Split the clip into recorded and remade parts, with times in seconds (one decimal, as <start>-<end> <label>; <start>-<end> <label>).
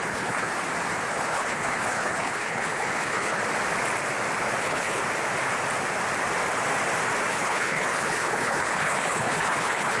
0.0-0.5 remade; 0.5-1.1 recorded; 1.1-3.4 remade; 3.4-4.6 recorded; 4.6-5.0 remade; 5.0-7.3 recorded; 7.3-10.0 remade